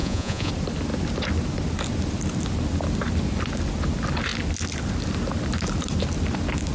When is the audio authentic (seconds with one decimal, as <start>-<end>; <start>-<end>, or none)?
0.5-6.7

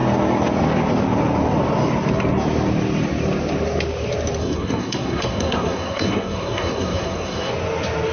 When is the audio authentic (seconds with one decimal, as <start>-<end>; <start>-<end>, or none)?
0.0-4.4; 7.5-8.1